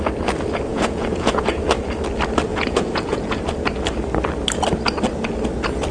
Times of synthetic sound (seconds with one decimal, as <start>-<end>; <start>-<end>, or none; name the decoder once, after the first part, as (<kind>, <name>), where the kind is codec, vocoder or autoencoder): 0.7-1.5 (vocoder, Vocos); 2.5-3.4